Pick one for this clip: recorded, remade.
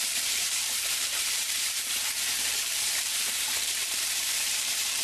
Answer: remade